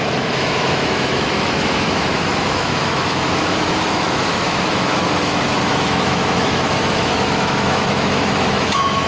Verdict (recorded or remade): remade